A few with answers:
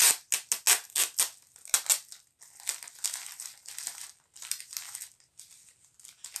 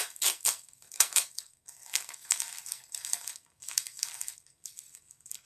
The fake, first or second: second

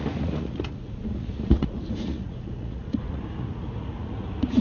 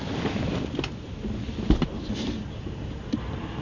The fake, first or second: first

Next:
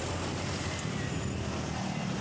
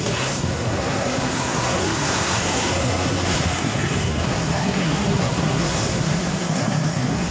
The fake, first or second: second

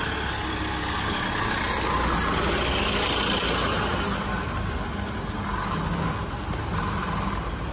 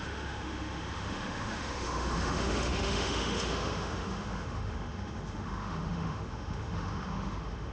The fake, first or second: second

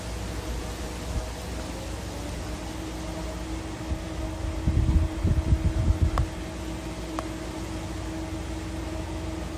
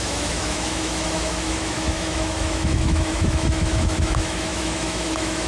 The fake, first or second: second